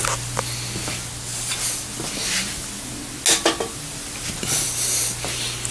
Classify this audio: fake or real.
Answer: real